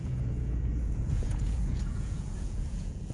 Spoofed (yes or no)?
yes